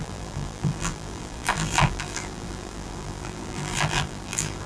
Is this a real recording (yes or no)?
no